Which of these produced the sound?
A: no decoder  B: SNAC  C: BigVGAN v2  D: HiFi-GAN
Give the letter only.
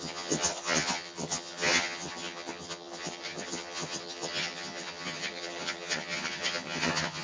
D